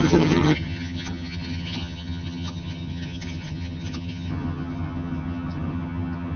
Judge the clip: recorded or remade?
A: remade